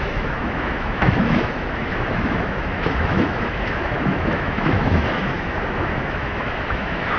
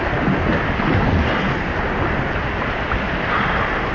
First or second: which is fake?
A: first